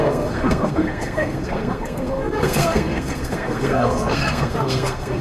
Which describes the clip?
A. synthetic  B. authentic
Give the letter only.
A